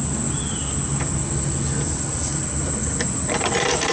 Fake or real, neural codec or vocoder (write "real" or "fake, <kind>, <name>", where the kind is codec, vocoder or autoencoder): real